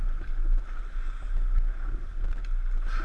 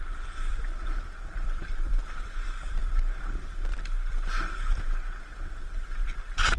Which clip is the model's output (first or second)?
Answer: second